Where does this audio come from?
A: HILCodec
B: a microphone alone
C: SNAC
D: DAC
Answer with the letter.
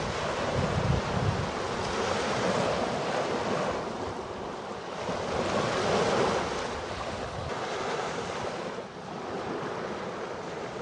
B